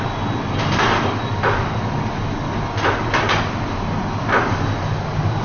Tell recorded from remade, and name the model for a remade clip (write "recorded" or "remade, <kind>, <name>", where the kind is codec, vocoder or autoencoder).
recorded